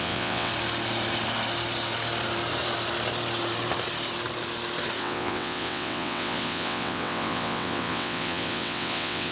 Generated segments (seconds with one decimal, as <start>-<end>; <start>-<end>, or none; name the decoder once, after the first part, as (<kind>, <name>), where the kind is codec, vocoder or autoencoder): 0.0-0.5 (vocoder, WaveNeXt); 5.0-9.3